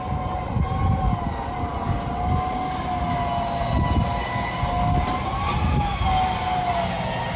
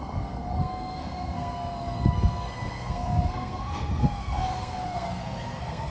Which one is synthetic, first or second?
second